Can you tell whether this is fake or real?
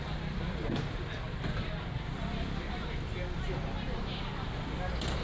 real